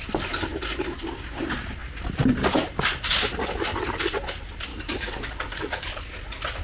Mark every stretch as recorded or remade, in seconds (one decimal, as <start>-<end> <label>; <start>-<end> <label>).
0.0-4.7 recorded; 4.7-6.0 remade; 6.0-6.6 recorded